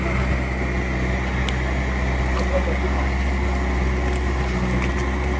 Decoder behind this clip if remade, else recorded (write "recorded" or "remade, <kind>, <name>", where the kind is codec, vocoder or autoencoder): recorded